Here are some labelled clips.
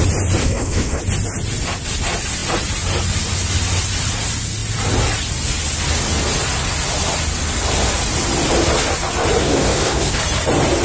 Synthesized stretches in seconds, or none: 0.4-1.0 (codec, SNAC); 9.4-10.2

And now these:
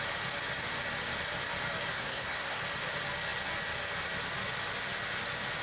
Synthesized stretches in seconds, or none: 1.9-2.6 (codec, SNAC)

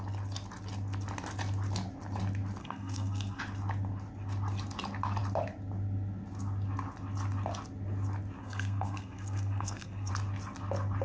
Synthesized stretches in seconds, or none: 2.6-3.4 (codec, SNAC); 8.4-10.1

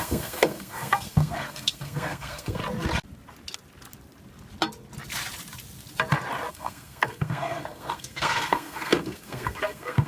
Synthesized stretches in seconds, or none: 0.0-2.6 (codec, SNAC); 6.5-10.1